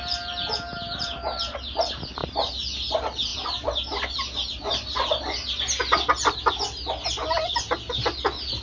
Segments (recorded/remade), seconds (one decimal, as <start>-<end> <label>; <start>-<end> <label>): 0.0-8.6 recorded